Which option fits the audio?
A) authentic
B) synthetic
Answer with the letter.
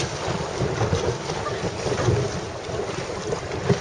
A